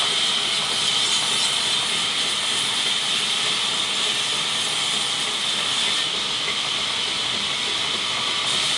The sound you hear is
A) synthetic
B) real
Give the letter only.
B